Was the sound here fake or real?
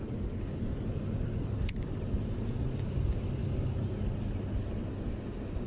real